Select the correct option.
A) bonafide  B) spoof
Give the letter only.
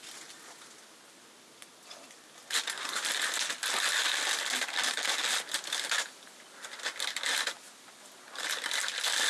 A